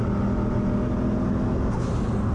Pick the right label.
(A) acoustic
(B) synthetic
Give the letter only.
A